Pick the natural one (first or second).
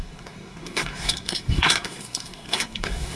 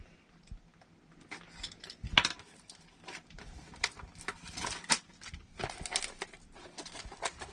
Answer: second